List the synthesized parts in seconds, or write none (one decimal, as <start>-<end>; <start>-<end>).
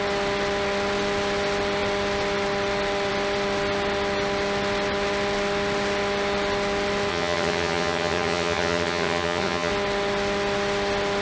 7.1-9.7